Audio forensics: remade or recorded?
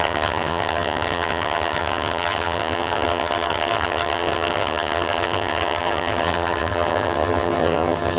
remade